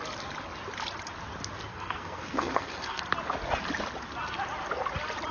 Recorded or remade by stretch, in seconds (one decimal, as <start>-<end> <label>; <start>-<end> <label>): 0.0-1.7 recorded; 1.7-3.0 remade; 3.0-5.3 recorded